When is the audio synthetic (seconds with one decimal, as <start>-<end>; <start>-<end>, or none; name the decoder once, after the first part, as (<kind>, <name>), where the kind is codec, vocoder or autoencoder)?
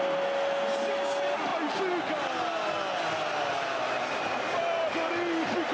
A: none